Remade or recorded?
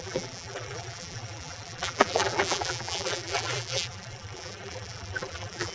remade